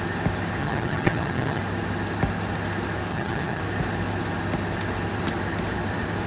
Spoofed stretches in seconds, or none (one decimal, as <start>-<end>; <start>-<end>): 0.6-1.6; 3.1-3.6